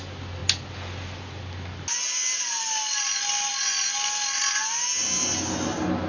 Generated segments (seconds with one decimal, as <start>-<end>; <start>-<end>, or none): none